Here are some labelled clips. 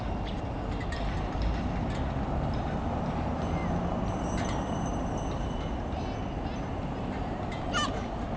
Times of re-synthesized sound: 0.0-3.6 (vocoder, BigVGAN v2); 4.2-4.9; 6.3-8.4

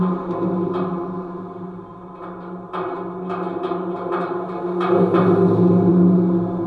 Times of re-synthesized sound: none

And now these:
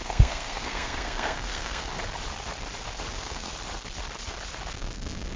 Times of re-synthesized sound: 0.0-1.9 (codec, SNAC); 3.1-3.5; 4.7-5.4

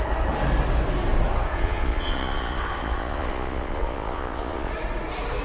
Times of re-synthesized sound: 1.5-4.7 (vocoder, Vocos)

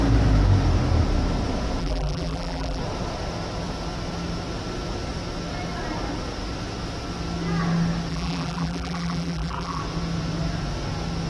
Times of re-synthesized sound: 1.8-2.8 (vocoder, BigVGAN v2); 8.1-9.8

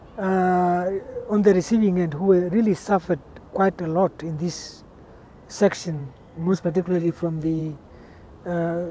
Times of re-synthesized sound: 6.0-7.6 (codec, SNAC)